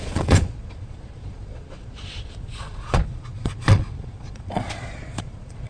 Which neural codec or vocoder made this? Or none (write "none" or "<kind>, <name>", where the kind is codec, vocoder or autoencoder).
vocoder, Vocos